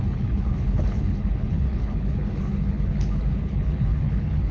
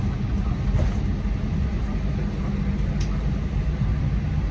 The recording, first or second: second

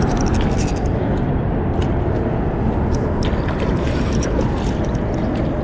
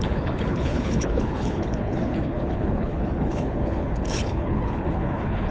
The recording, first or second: first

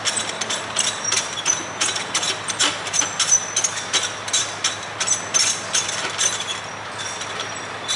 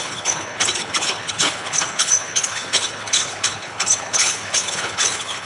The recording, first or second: first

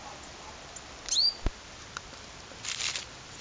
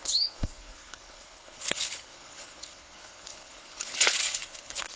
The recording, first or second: first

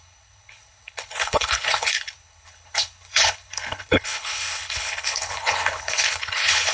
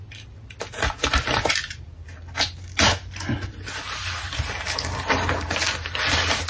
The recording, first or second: second